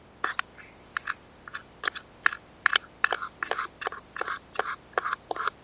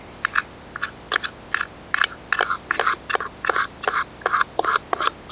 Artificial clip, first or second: first